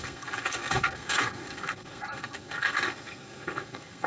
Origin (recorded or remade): remade